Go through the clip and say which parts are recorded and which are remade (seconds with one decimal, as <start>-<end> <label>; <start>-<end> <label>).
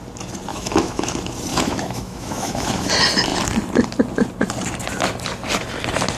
0.0-0.5 recorded; 0.5-1.1 remade; 1.1-1.5 recorded; 1.5-2.9 remade; 2.9-6.2 recorded